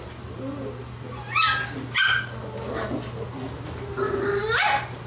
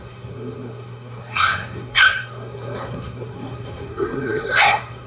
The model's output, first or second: second